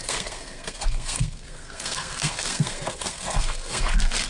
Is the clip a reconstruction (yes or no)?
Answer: yes